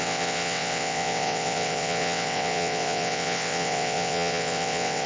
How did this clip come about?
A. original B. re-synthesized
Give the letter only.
B